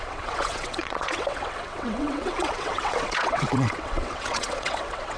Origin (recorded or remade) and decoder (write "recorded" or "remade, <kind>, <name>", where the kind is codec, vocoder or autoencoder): remade, vocoder, WaveNeXt